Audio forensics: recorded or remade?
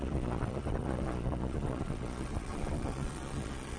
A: remade